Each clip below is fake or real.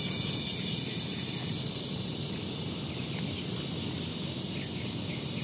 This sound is real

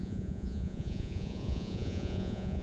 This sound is fake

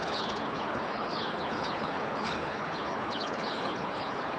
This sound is fake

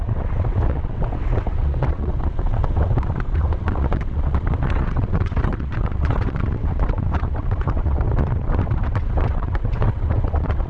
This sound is fake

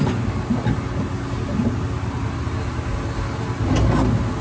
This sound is real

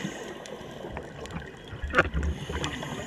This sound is real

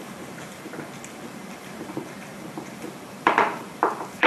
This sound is fake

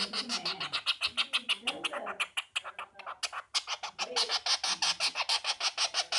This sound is real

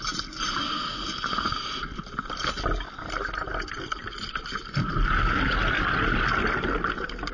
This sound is real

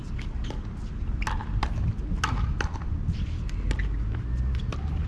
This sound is real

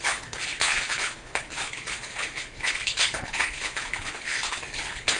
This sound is fake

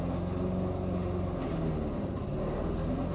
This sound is real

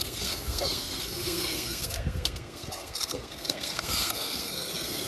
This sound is fake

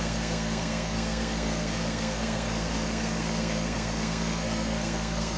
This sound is fake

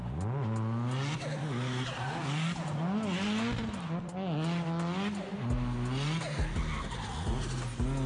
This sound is real